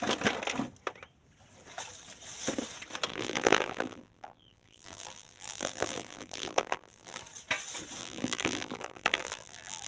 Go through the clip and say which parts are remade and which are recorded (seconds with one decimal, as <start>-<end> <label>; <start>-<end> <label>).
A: 0.0-3.1 recorded; 3.1-7.2 remade; 7.2-8.0 recorded; 8.0-9.9 remade